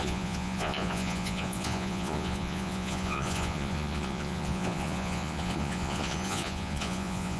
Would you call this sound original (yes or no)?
no